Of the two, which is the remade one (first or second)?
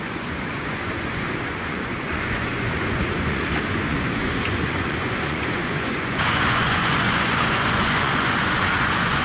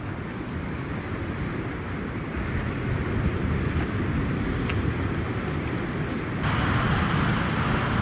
first